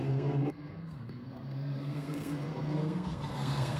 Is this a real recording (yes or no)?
no